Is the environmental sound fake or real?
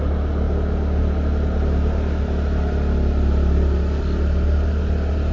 real